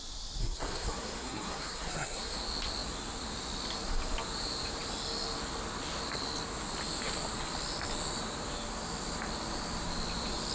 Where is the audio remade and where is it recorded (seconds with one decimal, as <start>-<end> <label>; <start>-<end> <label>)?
0.0-0.4 recorded; 0.4-2.4 remade; 2.4-10.5 recorded